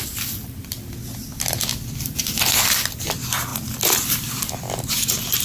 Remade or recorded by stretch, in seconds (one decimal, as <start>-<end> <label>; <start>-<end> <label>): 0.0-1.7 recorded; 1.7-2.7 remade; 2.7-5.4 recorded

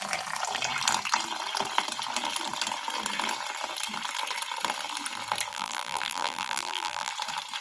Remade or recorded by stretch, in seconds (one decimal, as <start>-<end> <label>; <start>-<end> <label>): 0.0-5.5 recorded; 5.5-7.1 remade; 7.1-7.6 recorded

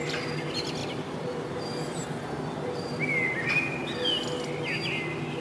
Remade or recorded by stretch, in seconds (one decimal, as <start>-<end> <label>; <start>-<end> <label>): 0.0-5.4 recorded

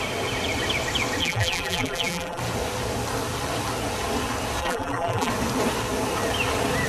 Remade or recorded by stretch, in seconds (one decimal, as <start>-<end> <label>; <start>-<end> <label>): 0.0-1.2 recorded; 1.2-2.4 remade; 2.4-4.6 recorded; 4.6-5.3 remade; 5.3-6.9 recorded